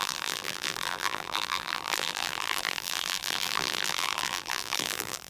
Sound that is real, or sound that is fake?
fake